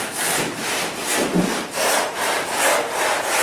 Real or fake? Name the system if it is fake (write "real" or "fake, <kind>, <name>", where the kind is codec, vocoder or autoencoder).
real